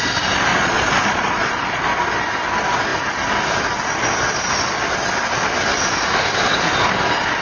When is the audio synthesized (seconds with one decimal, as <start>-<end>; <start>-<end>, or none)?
0.5-1.5